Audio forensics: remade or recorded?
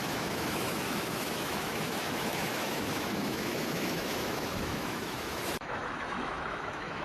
remade